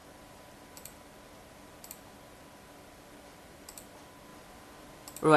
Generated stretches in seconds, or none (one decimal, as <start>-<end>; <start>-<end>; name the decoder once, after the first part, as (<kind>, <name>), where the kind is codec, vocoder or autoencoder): 0.0-4.3 (vocoder, BigVGAN v2)